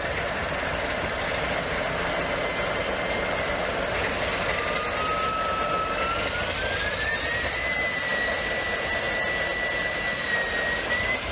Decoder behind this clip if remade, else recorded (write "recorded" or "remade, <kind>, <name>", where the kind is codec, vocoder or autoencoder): recorded